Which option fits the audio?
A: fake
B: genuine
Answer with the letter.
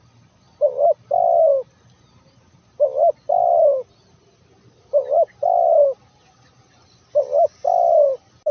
B